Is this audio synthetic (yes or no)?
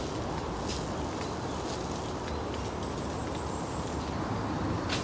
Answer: no